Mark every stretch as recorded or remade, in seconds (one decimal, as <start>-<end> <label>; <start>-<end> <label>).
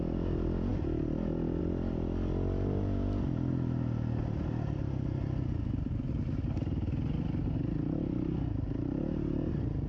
0.0-9.9 recorded